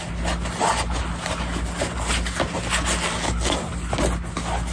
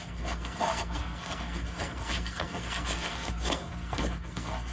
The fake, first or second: second